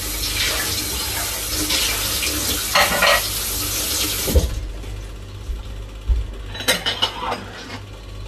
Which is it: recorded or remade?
recorded